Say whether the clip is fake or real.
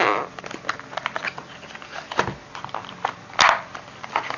real